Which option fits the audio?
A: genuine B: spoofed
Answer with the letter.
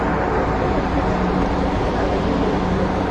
B